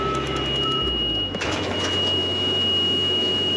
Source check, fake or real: fake